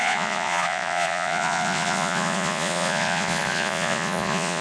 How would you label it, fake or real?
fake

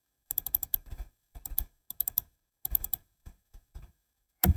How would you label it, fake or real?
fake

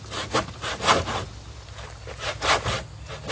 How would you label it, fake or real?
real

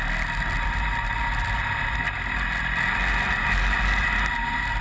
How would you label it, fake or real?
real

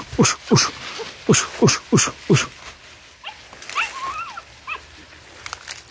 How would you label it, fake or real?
real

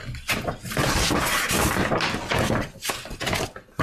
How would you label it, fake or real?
real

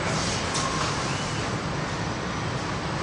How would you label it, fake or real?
real